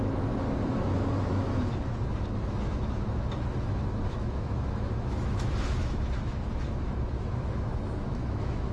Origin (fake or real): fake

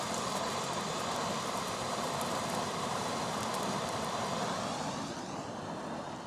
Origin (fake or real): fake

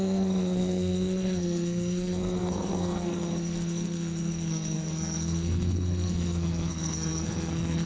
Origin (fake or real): fake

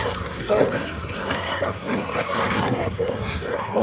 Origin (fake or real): fake